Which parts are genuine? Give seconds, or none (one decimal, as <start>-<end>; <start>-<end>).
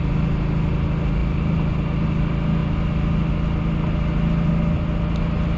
0.0-5.6